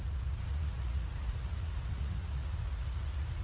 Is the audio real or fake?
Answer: fake